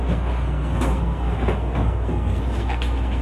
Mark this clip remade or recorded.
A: remade